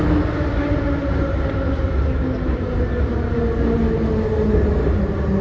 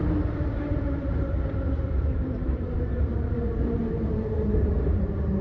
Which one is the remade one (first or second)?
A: second